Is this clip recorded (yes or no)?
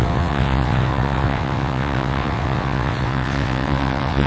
no